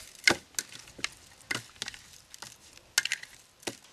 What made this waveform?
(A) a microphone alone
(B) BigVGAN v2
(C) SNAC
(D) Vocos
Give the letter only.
A